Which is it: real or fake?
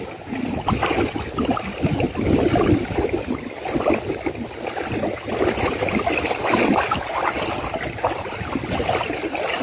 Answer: real